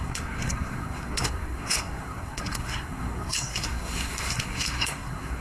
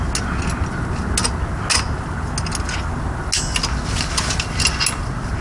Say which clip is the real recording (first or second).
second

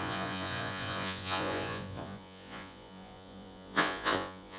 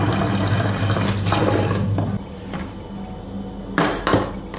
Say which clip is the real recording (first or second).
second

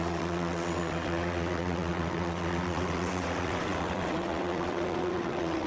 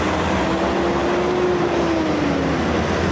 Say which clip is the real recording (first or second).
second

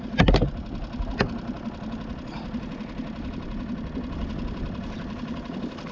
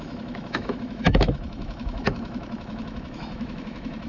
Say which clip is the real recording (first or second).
first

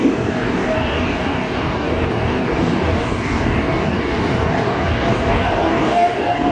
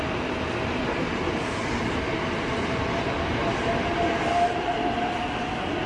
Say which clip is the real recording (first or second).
second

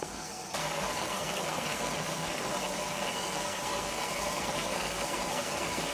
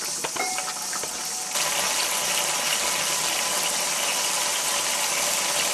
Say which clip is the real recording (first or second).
second